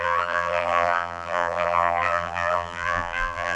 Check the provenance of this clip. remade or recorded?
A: remade